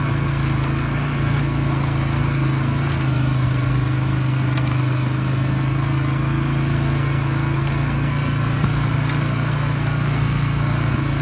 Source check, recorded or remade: remade